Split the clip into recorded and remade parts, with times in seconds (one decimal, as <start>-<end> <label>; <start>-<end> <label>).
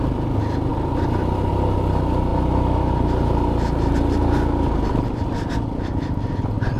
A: 0.0-6.8 recorded